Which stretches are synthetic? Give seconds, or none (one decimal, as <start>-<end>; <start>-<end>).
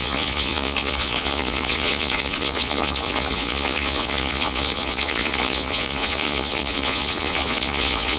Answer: 0.0-8.2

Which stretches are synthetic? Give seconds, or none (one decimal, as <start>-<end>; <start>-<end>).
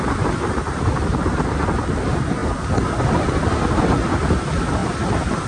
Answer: none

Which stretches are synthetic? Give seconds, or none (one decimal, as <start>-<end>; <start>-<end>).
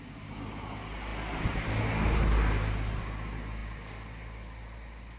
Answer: none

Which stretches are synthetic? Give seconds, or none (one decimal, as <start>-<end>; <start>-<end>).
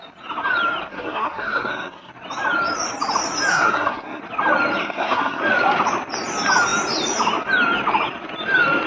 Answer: 0.9-2.1; 3.5-4.2; 4.8-5.4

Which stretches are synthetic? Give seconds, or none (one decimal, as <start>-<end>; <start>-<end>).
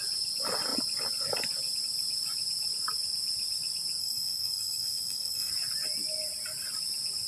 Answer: 4.0-5.5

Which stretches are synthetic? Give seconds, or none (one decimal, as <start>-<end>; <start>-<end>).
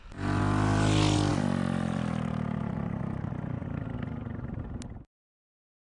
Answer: none